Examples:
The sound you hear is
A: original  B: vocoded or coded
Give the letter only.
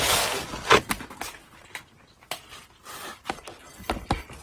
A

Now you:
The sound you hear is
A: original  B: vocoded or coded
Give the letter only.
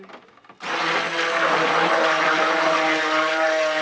A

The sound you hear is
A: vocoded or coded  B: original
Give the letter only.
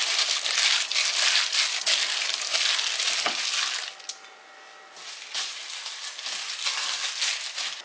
B